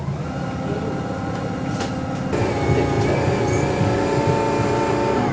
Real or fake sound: real